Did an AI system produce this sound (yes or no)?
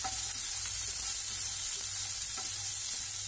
no